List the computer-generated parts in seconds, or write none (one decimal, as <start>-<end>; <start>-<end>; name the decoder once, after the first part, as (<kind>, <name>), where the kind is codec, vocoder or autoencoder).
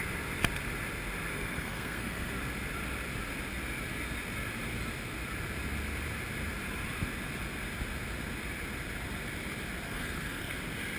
1.3-2.3 (codec, SNAC); 9.9-10.5